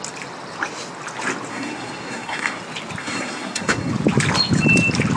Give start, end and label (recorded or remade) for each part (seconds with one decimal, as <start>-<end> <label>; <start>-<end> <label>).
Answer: 0.0-1.5 recorded; 1.5-2.6 remade; 2.6-3.0 recorded; 3.0-3.9 remade; 3.9-5.2 recorded